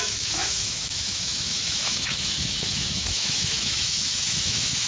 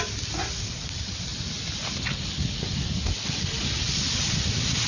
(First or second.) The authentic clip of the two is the second